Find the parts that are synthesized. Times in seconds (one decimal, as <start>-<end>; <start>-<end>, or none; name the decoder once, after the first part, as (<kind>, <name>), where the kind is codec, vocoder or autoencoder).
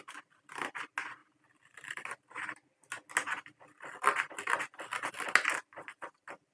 none